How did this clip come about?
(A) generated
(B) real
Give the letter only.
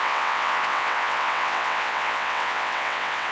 A